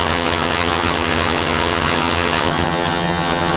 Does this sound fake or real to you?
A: fake